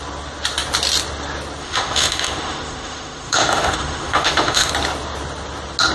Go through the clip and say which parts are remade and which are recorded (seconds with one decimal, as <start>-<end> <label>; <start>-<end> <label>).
0.0-1.6 recorded; 1.6-4.7 remade; 4.7-5.9 recorded